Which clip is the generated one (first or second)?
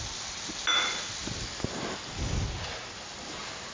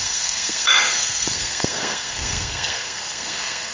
second